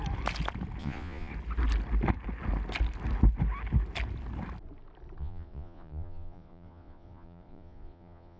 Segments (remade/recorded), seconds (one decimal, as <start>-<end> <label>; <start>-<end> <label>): 0.0-0.8 recorded; 0.8-1.3 remade; 1.3-5.2 recorded; 5.2-8.4 remade